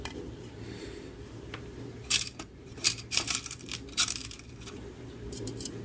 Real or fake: fake